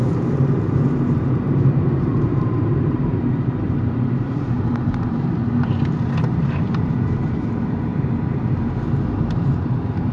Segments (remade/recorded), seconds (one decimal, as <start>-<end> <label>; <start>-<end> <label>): 0.0-7.9 remade; 7.9-9.2 recorded; 9.2-10.1 remade